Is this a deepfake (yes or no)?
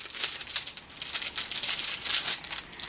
no